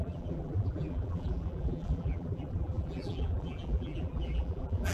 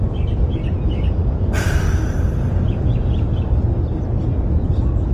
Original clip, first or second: second